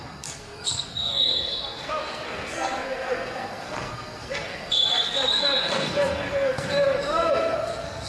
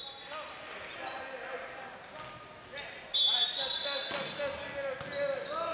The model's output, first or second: first